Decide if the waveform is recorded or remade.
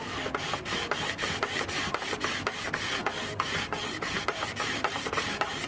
recorded